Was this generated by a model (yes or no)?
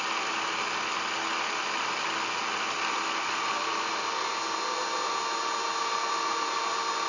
no